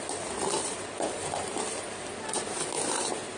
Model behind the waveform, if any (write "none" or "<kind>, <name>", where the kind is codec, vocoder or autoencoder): none